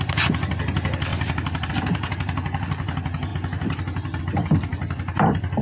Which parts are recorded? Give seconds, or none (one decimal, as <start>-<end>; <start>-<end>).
0.0-5.6